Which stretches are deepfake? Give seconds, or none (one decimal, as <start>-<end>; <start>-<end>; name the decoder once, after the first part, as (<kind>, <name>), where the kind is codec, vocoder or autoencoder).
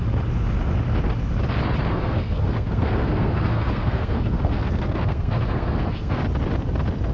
1.9-6.2 (codec, SNAC)